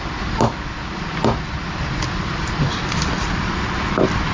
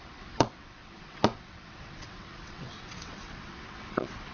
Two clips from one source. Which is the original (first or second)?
first